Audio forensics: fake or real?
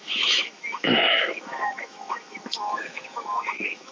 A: fake